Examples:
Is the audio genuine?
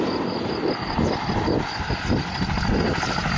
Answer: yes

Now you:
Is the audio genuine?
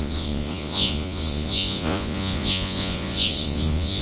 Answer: no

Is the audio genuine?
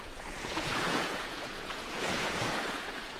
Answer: no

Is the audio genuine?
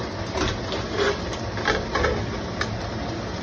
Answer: yes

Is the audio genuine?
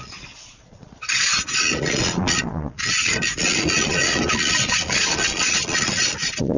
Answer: no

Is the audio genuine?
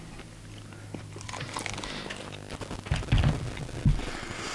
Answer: yes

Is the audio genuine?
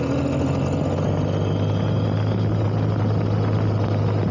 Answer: yes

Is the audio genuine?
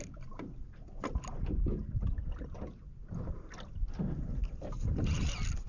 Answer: yes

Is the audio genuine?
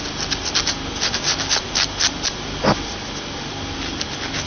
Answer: yes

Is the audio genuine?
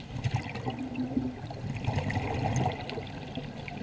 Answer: yes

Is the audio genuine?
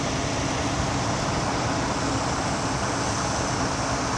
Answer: yes